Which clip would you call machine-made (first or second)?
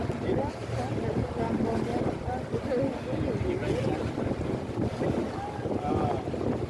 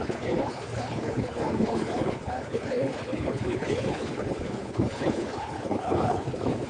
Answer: second